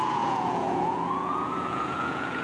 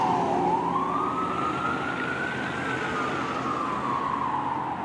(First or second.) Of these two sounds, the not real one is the first